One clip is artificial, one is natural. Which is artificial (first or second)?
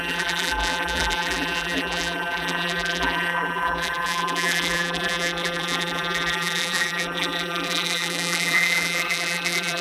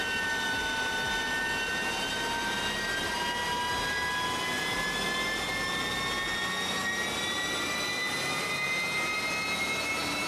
first